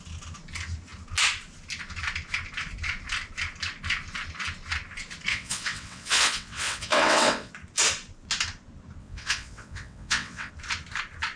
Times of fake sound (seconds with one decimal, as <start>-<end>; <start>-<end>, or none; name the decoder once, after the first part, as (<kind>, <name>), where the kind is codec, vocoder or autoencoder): 5.3-7.5 (vocoder, WaveNeXt); 9.0-10.5